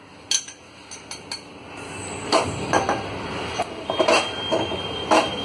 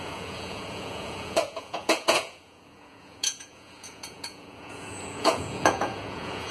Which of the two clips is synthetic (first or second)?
second